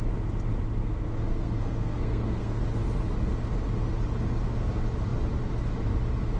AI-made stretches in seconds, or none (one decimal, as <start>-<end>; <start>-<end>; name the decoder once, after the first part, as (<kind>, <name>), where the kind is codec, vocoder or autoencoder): 0.8-2.6 (codec, SNAC)